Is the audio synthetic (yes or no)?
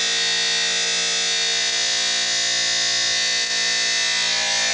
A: no